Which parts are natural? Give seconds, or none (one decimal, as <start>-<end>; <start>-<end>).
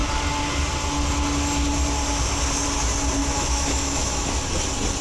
0.0-3.2; 4.3-5.0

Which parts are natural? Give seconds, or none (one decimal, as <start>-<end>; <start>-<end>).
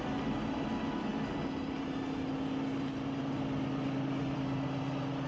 0.0-5.3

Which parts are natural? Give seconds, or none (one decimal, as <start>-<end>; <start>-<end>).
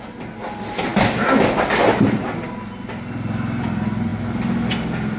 0.0-5.2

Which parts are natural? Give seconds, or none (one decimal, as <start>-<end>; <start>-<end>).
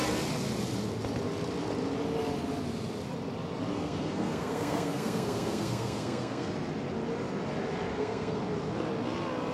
0.0-3.7; 6.5-7.9; 8.4-9.5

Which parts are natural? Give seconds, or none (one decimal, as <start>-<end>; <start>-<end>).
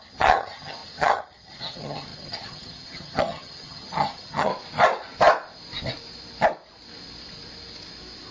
4.5-8.3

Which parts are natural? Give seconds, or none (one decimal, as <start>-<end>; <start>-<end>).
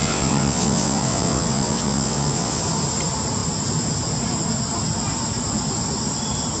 2.6-6.6